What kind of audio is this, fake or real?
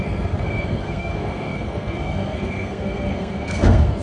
fake